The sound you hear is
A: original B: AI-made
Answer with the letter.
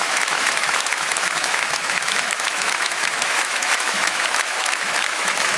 B